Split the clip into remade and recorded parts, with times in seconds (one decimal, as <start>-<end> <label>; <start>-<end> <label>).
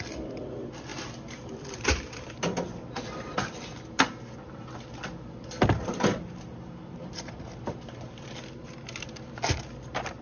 0.0-6.1 recorded; 6.1-8.2 remade; 8.2-10.2 recorded